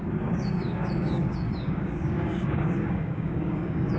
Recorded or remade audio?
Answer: remade